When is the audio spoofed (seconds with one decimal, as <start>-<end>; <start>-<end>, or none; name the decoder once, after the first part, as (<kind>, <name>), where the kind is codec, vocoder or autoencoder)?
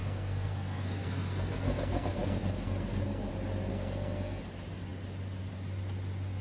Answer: 0.0-3.3 (codec, SNAC); 3.7-4.4